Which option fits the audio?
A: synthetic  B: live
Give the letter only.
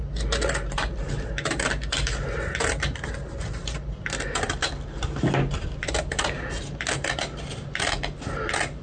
B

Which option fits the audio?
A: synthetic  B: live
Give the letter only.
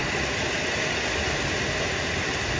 B